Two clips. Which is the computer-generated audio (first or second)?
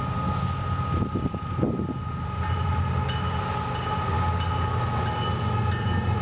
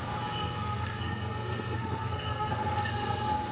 second